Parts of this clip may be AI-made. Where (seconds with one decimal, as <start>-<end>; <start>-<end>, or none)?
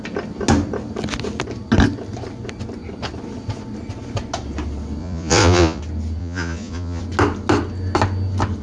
5.0-5.8; 6.2-7.0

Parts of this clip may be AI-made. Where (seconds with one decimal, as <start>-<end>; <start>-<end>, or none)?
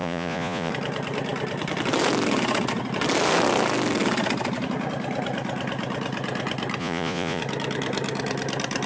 0.0-0.7; 6.8-7.4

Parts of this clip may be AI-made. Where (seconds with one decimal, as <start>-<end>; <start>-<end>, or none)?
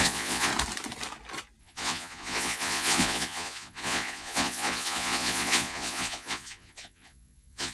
0.0-0.5; 1.6-7.7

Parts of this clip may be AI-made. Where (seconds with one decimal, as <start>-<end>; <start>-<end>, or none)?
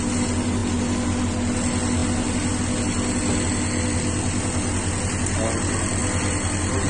none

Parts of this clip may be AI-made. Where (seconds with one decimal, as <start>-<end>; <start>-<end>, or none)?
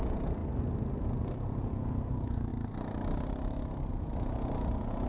0.0-0.4; 1.0-2.5; 3.9-5.1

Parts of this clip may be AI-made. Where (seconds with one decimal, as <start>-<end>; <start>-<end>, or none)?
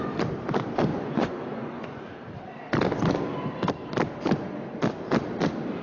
0.9-2.0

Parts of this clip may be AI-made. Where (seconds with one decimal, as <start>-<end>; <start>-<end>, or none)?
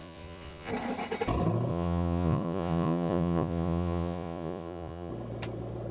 0.0-0.7; 1.7-5.1